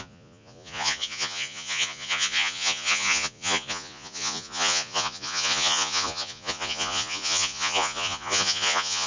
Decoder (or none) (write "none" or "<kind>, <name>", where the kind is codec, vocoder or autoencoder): vocoder, Vocos